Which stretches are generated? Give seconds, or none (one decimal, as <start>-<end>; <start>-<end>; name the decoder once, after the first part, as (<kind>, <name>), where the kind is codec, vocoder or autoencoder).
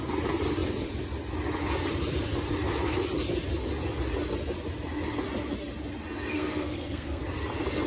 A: 6.3-7.2 (codec, SNAC)